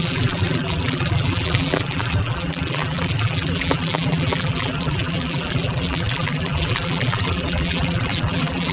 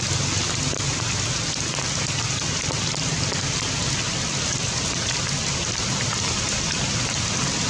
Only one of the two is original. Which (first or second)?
second